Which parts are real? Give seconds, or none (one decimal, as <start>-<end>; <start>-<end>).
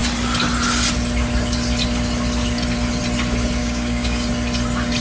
0.0-3.6; 4.3-5.0